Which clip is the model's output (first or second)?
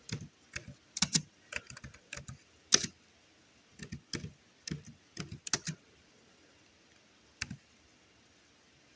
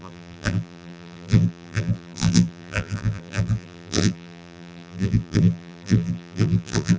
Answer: second